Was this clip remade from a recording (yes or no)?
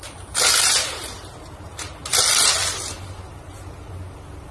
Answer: no